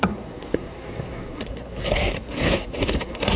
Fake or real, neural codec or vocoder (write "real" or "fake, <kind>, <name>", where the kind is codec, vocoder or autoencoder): fake, codec, SNAC